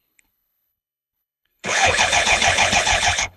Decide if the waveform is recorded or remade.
remade